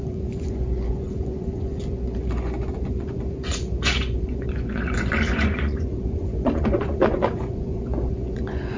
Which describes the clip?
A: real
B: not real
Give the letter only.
B